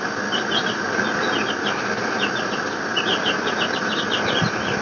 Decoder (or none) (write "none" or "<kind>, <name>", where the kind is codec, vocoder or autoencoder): none